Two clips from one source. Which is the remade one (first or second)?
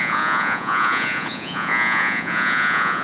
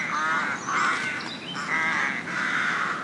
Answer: first